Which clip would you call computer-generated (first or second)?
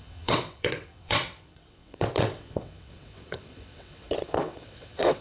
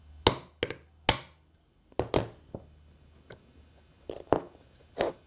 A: first